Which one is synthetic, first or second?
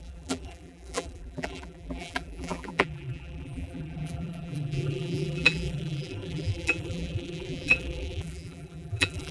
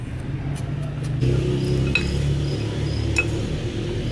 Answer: first